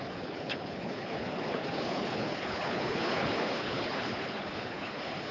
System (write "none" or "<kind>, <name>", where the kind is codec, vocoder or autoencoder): codec, HILCodec